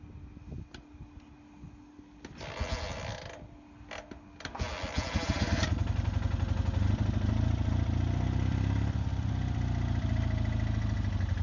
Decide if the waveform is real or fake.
real